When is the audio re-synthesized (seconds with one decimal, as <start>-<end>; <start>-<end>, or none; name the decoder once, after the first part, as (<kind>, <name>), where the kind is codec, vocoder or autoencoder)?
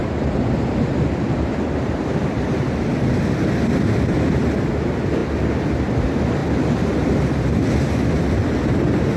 0.0-4.4 (vocoder, BigVGAN v2); 5.2-5.7